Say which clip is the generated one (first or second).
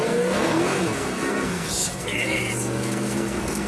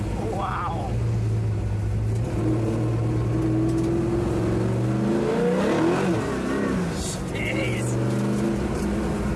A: first